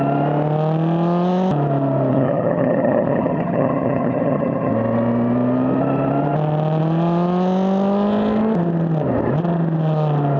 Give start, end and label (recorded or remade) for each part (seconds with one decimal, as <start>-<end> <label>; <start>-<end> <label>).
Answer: 0.0-2.1 recorded; 2.1-4.7 remade; 4.7-10.4 recorded